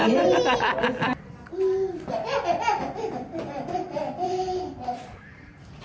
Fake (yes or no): no